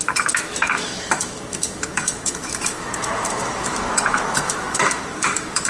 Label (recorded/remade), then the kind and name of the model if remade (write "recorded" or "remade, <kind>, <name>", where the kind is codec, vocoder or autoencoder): remade, autoencoder, DAC-VAE